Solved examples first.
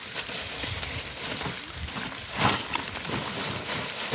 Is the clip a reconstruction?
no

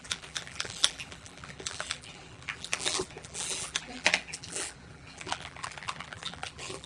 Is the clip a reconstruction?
yes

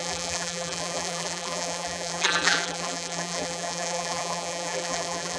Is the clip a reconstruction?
yes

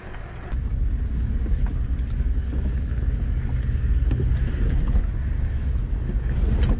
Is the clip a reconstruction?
no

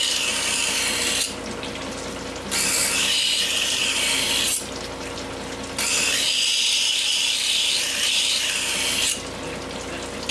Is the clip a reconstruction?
no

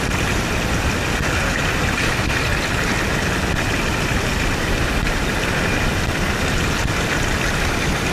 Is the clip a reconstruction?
no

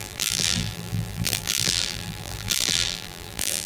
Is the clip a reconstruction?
yes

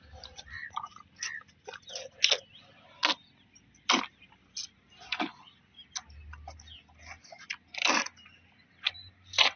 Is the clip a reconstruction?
no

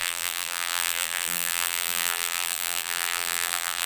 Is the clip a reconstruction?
yes